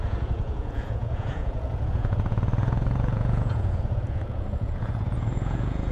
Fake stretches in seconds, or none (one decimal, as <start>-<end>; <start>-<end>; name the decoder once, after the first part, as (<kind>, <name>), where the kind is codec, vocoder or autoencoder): 0.0-5.9 (vocoder, Vocos)